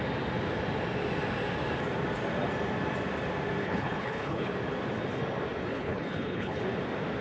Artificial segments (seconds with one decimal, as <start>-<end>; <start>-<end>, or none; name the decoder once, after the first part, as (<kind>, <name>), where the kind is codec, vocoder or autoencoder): 3.6-4.5 (codec, HILCodec); 5.7-6.6